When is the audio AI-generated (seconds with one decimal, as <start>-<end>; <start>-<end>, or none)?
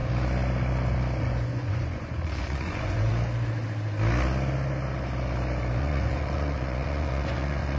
1.2-3.1; 5.8-7.8